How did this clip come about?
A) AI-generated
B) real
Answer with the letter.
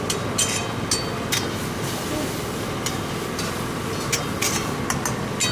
B